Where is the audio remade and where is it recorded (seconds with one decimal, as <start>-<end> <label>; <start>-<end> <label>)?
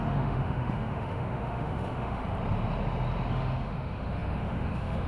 0.0-2.2 remade; 2.2-3.3 recorded; 3.3-5.1 remade